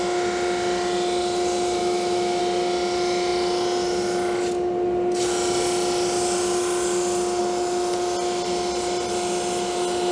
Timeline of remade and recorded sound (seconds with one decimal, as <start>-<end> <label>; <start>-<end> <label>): 0.0-1.8 recorded; 1.8-2.4 remade; 2.4-10.1 recorded